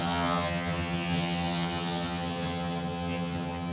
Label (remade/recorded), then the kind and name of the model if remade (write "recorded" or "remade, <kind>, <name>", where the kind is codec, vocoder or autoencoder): remade, vocoder, HiFi-GAN